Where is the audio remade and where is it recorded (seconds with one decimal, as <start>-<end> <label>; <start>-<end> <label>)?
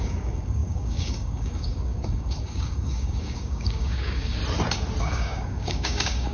0.0-4.4 remade; 4.4-5.0 recorded; 5.0-6.3 remade